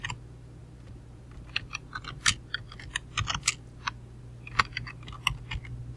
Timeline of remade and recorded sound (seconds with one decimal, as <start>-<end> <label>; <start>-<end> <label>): 0.0-6.0 recorded